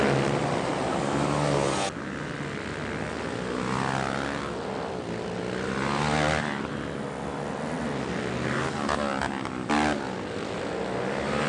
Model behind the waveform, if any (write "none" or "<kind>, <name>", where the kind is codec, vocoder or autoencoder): none